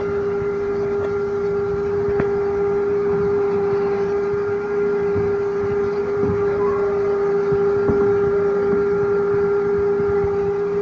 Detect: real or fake real